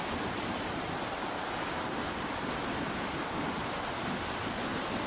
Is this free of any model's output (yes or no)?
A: yes